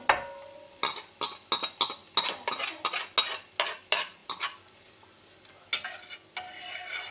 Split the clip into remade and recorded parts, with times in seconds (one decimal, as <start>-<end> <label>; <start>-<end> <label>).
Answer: 0.0-7.1 recorded